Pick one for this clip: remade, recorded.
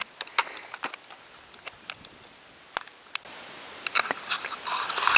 recorded